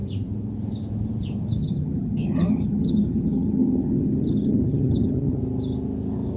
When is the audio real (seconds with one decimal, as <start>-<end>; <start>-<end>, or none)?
0.0-1.6; 5.4-6.4